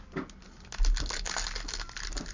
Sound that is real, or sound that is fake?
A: real